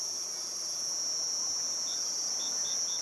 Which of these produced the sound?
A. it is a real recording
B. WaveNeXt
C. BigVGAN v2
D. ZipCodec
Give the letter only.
C